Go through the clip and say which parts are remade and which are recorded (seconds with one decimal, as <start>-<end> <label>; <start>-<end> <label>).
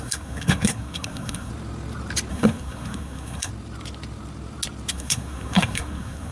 0.0-1.5 remade; 1.5-2.3 recorded; 2.3-3.5 remade; 3.5-4.9 recorded; 4.9-6.3 remade